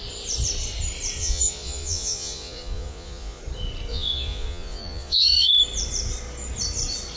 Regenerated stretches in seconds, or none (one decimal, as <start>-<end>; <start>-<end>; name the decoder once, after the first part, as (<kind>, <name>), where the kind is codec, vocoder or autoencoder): 1.2-3.4 (vocoder, Vocos); 3.9-5.5